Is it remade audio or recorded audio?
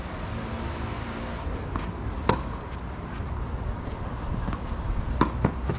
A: recorded